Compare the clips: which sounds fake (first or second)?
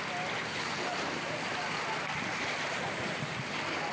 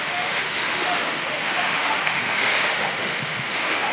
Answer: second